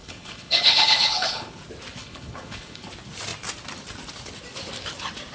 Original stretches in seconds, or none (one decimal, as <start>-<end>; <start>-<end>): 1.6-2.0; 2.9-5.3